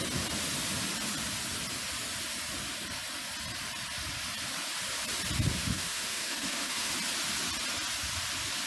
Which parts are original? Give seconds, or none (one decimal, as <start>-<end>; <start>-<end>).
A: 0.0-5.6; 6.9-8.7